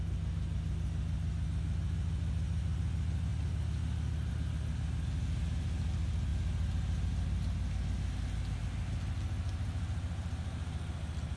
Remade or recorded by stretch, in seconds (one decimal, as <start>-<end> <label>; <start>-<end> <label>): 0.0-11.4 recorded